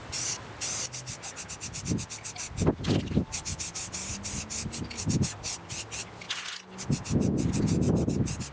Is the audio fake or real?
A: real